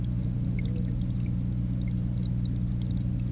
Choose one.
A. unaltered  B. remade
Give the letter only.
A